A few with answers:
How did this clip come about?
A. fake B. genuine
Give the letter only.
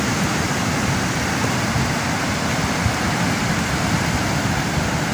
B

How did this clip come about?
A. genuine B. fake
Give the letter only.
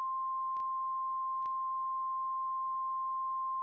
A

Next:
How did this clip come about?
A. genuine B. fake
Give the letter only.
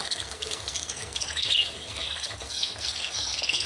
B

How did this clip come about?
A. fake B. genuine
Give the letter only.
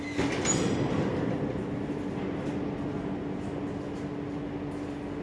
B